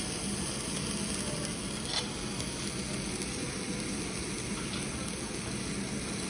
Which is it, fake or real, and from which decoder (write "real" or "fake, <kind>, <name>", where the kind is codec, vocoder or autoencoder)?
real